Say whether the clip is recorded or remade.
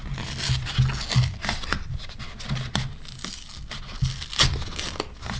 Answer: recorded